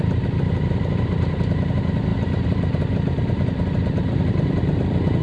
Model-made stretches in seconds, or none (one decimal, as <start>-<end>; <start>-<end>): none